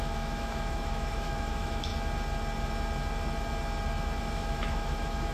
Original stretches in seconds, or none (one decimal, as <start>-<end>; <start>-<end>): 1.9-4.2